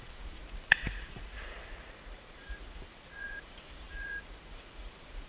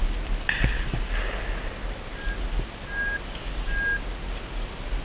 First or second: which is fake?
first